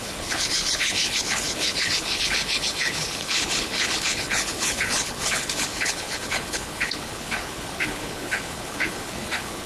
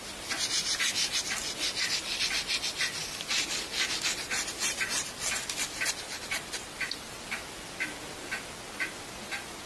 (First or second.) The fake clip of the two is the first